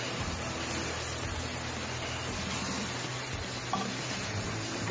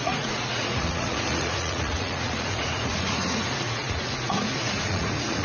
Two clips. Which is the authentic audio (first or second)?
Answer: first